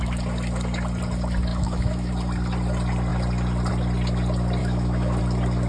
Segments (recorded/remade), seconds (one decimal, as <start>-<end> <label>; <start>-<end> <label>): 0.0-1.5 recorded; 1.5-2.1 remade; 2.1-4.6 recorded; 4.6-5.2 remade; 5.2-5.7 recorded